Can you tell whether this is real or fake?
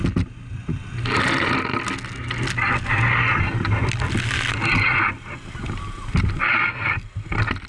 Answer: real